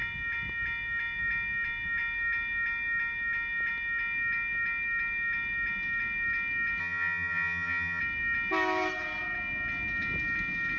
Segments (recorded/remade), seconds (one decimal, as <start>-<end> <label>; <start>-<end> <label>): 0.0-6.8 recorded; 6.8-8.0 remade; 8.0-10.8 recorded

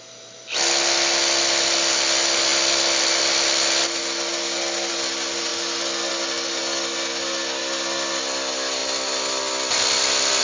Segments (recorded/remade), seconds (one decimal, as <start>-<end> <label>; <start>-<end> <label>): 0.0-10.4 recorded

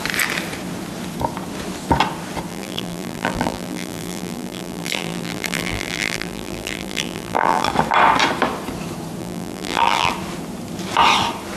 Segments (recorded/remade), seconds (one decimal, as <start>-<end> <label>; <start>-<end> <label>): 0.0-2.5 recorded; 2.5-7.7 remade; 7.7-9.2 recorded; 9.2-10.1 remade; 10.1-11.6 recorded

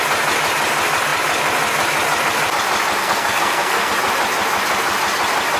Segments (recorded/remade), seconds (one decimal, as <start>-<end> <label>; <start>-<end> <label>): 0.0-3.0 recorded; 3.0-3.9 remade; 3.9-5.6 recorded